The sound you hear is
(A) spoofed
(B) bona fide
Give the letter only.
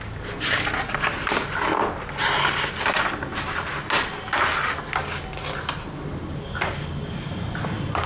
B